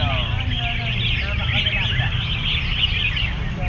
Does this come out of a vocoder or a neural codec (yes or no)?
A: no